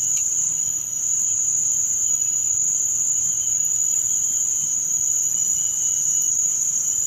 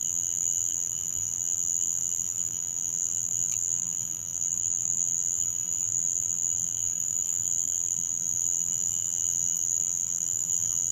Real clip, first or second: first